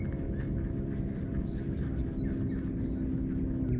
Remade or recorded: recorded